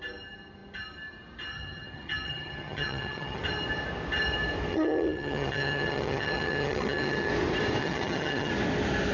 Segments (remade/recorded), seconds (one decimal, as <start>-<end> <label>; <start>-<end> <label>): 0.0-1.5 recorded; 1.5-3.4 remade; 3.4-4.7 recorded; 4.7-7.3 remade; 7.3-7.8 recorded; 7.8-8.5 remade; 8.5-9.1 recorded